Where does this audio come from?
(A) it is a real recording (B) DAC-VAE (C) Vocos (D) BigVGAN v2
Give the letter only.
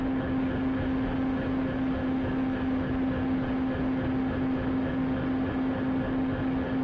A